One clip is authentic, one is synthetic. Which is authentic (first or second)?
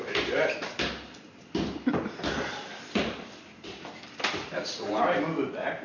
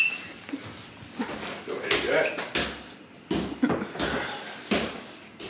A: second